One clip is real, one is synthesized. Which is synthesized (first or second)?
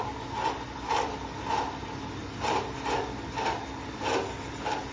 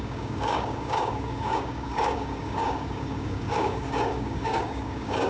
second